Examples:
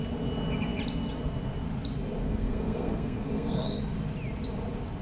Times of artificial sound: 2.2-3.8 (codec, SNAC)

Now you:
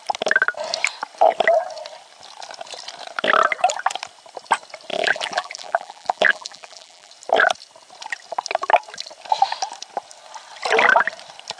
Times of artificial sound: 4.9-7.1 (vocoder, BigVGAN v2)

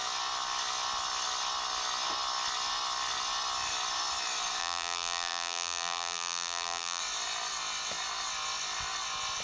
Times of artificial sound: 4.6-7.0 (vocoder, BigVGAN v2)